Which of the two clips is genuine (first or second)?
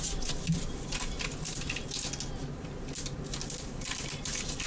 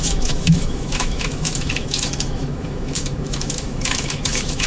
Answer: first